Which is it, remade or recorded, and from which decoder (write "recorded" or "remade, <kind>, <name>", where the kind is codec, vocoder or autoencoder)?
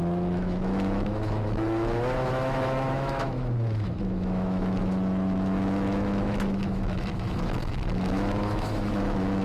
remade, autoencoder, DAC-VAE